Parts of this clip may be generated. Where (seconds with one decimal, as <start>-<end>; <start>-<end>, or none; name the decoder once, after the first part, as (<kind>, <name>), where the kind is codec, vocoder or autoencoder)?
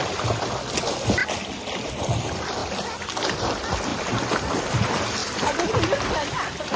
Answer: 1.2-1.9 (vocoder, BigVGAN v2); 3.9-4.6